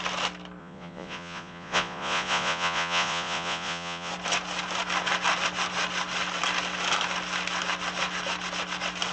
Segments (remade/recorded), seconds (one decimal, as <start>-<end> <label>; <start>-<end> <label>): 0.0-0.6 recorded; 0.6-4.1 remade; 4.1-9.1 recorded